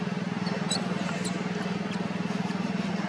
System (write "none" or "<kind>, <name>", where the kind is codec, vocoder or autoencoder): none